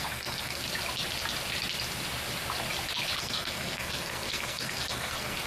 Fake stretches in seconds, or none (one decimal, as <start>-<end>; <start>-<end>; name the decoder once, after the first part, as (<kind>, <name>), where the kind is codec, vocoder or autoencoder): 0.0-0.6 (codec, SNAC); 3.2-5.5